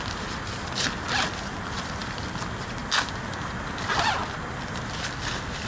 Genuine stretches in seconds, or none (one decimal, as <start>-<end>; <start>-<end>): 0.0-5.7